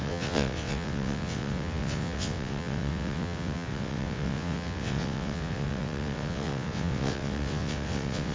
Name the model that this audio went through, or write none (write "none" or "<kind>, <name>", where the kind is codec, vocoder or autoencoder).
vocoder, WaveNeXt